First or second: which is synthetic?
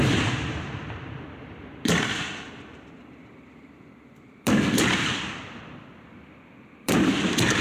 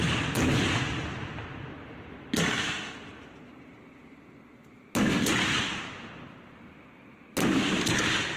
first